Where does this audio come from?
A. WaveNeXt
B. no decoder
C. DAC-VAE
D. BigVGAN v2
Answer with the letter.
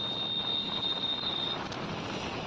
B